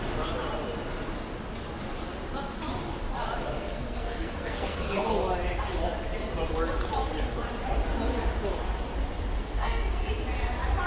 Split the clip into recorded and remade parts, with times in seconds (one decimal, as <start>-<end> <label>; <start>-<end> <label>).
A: 0.0-3.5 recorded; 3.5-5.1 remade; 5.1-9.4 recorded; 9.4-10.1 remade; 10.1-10.9 recorded

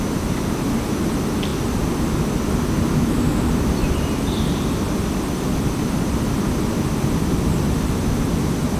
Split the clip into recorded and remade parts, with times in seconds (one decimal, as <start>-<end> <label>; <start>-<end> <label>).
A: 0.0-8.8 recorded